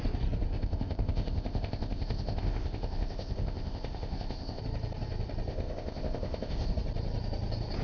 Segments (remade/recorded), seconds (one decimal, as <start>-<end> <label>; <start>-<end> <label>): 0.0-0.5 recorded; 0.5-4.6 remade; 4.6-5.5 recorded; 5.5-6.7 remade; 6.7-7.8 recorded

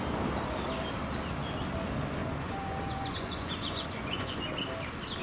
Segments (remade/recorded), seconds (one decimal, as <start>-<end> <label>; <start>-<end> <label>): 0.0-2.2 recorded; 2.2-4.4 remade; 4.4-5.2 recorded